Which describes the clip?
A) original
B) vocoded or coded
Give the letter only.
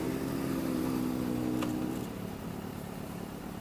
A